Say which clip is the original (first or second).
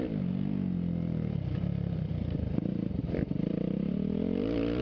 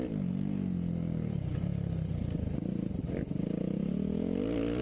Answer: second